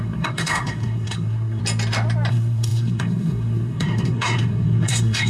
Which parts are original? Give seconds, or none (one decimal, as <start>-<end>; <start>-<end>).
1.6-2.3